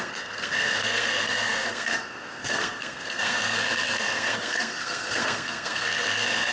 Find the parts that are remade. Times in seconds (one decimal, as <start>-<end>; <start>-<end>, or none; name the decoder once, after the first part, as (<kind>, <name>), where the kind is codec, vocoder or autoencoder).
0.0-6.5 (codec, SNAC)